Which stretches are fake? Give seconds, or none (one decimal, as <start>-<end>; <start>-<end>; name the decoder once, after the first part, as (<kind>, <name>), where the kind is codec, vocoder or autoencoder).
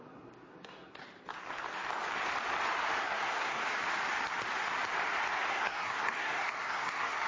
0.0-1.0 (codec, SNAC); 3.0-3.7; 5.5-7.3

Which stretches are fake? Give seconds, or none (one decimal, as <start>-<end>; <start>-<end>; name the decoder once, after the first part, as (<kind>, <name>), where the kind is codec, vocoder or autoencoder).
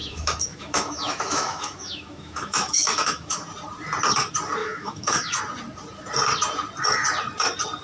0.0-3.4 (autoencoder, DAC-VAE); 4.6-5.4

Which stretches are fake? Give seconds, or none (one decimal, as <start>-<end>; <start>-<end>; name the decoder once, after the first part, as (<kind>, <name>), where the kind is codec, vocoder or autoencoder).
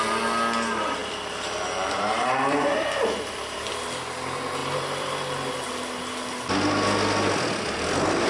1.0-3.7 (vocoder, BigVGAN v2); 4.6-5.1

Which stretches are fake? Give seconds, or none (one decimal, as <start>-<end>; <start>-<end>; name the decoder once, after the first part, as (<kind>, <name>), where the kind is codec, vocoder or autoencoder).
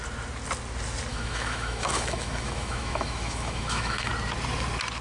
1.1-4.1 (autoencoder, DAC-VAE)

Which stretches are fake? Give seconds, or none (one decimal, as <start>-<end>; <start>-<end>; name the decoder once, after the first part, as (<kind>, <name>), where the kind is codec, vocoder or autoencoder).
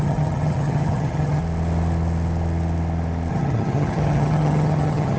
0.0-1.4 (vocoder, HiFi-GAN); 3.3-5.2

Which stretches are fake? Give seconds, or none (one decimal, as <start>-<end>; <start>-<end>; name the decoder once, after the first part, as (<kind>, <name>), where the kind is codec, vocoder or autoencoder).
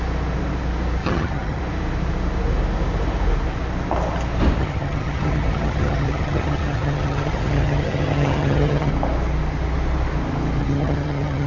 1.0-1.6 (vocoder, HiFi-GAN); 4.6-8.9; 10.6-11.5